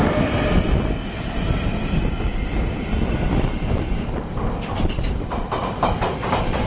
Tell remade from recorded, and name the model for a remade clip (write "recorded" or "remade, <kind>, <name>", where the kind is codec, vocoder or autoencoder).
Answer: remade, vocoder, BigVGAN v2